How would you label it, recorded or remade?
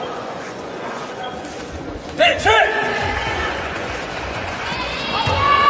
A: remade